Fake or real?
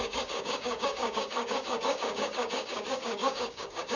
fake